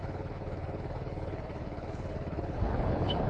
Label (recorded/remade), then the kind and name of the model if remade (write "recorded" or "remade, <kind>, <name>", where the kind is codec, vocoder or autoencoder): remade, codec, HILCodec